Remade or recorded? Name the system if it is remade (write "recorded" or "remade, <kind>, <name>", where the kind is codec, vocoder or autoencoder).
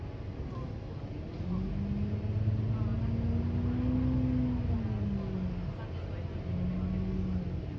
recorded